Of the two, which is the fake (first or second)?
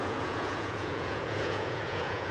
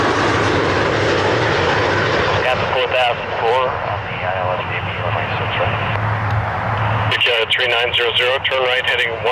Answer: first